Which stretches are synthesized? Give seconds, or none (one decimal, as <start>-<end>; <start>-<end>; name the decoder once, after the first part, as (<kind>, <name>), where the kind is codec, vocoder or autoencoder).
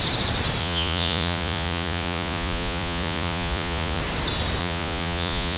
0.6-4.0 (vocoder, Vocos); 4.6-5.6